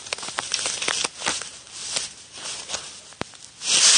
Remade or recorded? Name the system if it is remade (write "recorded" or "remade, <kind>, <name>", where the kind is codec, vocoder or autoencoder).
recorded